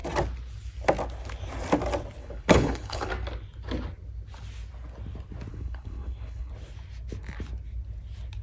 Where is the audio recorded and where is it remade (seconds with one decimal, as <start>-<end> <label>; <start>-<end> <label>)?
0.0-2.2 recorded; 2.2-3.1 remade; 3.1-5.5 recorded; 5.5-6.5 remade; 6.5-8.4 recorded